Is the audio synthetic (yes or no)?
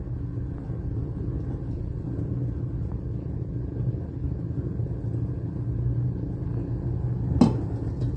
no